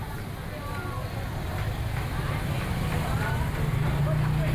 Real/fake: real